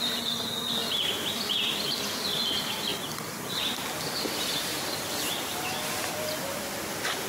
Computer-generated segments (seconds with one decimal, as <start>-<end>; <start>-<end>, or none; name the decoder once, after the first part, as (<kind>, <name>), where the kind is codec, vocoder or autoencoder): none